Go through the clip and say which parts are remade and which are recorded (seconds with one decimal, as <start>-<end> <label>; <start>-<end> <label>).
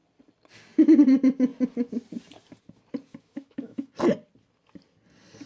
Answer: 0.0-3.1 recorded; 3.1-3.9 remade; 3.9-5.5 recorded